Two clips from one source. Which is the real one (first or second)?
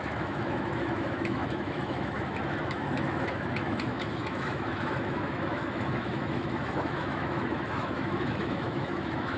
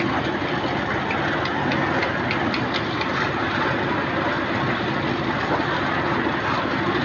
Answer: second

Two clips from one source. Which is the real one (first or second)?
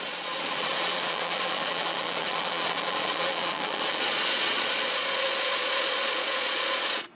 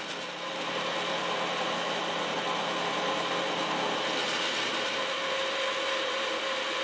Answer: second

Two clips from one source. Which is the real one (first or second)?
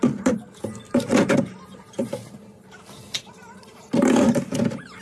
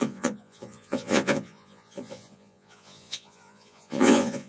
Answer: first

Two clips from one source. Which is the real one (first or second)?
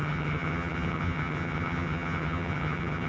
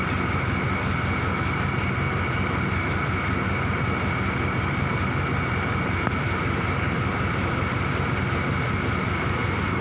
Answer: second